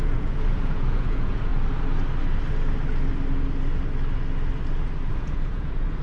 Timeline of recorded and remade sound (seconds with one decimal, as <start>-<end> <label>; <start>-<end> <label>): 0.0-1.5 remade; 1.5-5.1 recorded; 5.1-6.0 remade